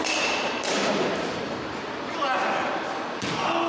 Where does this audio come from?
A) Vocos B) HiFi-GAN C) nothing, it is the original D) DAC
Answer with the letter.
C